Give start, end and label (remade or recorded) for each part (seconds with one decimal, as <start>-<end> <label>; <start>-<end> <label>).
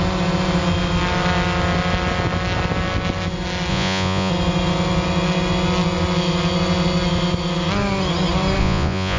0.0-3.7 recorded; 3.7-4.3 remade; 4.3-8.6 recorded; 8.6-9.2 remade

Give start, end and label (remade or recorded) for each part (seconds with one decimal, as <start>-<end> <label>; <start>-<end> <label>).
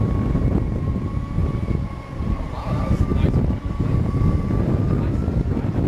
0.0-5.9 recorded